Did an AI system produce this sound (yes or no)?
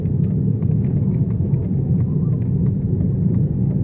no